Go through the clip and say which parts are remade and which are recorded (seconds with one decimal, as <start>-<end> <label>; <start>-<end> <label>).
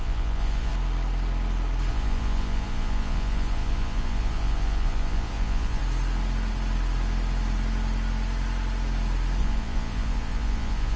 0.0-0.7 remade; 0.7-1.9 recorded; 1.9-5.8 remade; 5.8-9.4 recorded; 9.4-11.0 remade